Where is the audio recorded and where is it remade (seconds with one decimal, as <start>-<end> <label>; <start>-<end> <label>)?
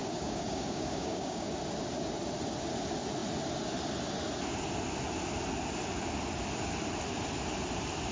0.0-1.5 remade; 1.5-8.1 recorded